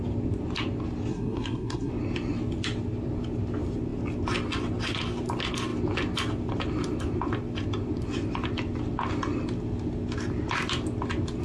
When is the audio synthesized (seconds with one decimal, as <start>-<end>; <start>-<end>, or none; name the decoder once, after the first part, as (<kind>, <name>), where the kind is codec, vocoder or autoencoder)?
1.1-1.9 (codec, SNAC)